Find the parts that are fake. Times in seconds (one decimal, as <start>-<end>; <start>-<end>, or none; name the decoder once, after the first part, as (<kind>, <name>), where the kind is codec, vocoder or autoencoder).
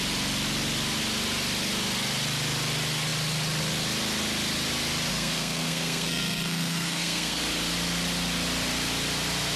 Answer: 5.1-7.4 (codec, SNAC)